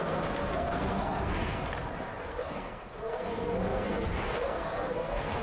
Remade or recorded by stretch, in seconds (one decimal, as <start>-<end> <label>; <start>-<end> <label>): 0.0-1.6 remade; 1.6-2.2 recorded; 2.2-5.4 remade